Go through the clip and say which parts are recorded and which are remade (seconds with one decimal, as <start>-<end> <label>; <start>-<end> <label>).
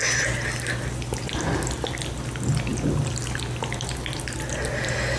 0.0-5.2 recorded